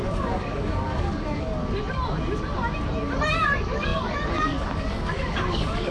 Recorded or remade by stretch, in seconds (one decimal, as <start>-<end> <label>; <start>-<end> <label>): 0.0-1.6 remade; 1.6-3.3 recorded; 3.3-5.9 remade

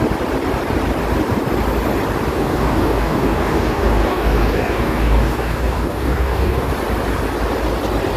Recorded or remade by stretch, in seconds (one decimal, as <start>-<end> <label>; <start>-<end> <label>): 0.0-2.3 recorded; 2.3-6.7 remade; 6.7-8.2 recorded

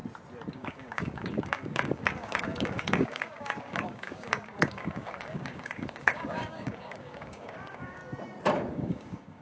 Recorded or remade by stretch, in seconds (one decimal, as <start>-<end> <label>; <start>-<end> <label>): 0.0-0.5 recorded; 0.5-8.0 remade; 8.0-8.7 recorded; 8.7-9.4 remade

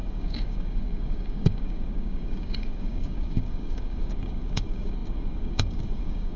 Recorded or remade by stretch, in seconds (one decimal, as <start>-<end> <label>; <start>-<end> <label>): 0.0-6.4 remade

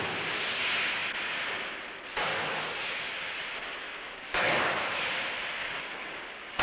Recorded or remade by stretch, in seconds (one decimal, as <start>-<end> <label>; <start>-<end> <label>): 0.0-3.8 recorded; 3.8-4.8 remade; 4.8-5.6 recorded; 5.6-6.6 remade

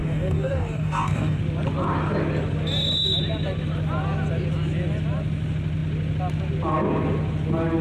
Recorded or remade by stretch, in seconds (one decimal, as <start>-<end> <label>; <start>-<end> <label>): 0.0-1.4 remade; 1.4-7.8 recorded

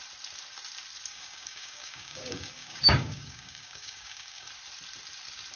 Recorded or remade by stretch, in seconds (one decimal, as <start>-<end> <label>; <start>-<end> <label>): 0.0-1.1 recorded; 1.1-4.5 remade; 4.5-5.6 recorded

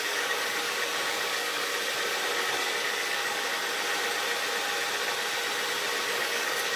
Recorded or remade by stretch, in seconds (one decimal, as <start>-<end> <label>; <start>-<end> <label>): 0.0-1.7 remade; 1.7-2.4 recorded; 2.4-3.5 remade; 3.5-6.1 recorded; 6.1-6.8 remade